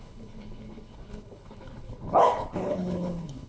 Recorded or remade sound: remade